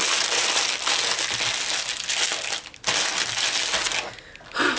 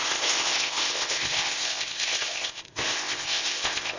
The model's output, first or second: second